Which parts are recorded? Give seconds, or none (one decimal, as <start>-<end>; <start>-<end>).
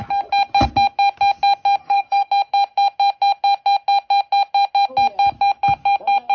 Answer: 0.0-1.8; 2.3-6.3